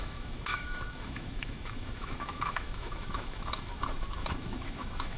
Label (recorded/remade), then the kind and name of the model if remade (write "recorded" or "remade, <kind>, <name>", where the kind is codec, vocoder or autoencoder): remade, autoencoder, DAC-VAE